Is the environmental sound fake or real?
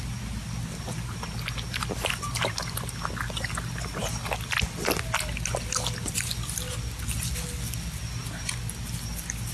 real